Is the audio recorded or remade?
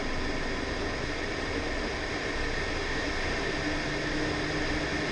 recorded